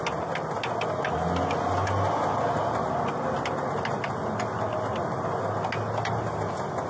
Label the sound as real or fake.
real